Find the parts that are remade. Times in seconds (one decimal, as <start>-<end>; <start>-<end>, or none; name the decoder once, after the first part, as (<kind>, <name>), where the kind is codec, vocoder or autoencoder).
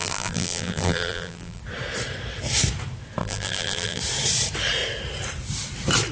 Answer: 0.0-1.6 (vocoder, BigVGAN v2); 3.2-4.0